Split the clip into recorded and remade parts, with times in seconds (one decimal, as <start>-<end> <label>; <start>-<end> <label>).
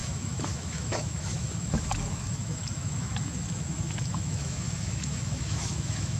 0.0-6.2 remade